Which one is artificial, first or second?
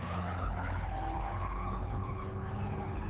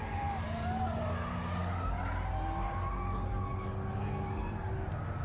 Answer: first